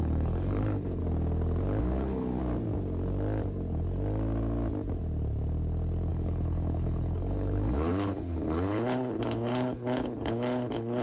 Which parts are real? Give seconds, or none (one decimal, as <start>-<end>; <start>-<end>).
1.0-1.8; 2.4-6.1